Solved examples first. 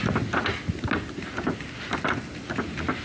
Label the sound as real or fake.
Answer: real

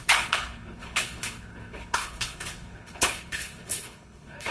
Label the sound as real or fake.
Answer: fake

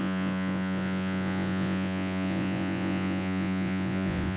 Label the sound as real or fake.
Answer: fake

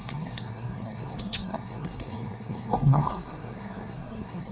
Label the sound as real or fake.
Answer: fake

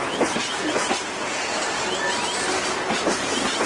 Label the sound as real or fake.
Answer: real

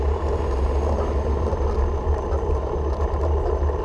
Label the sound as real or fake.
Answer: real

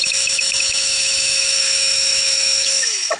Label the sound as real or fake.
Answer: fake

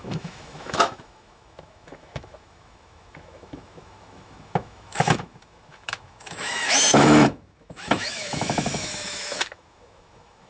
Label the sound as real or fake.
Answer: fake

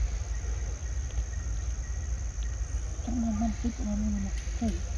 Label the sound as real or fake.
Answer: real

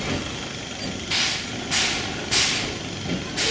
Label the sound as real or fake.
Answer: real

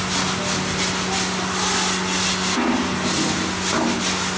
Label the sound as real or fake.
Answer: real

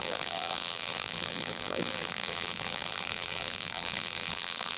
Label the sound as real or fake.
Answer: fake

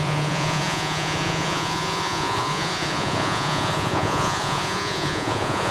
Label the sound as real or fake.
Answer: fake